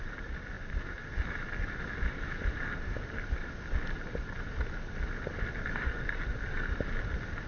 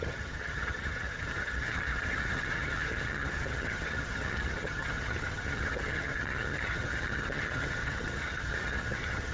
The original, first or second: first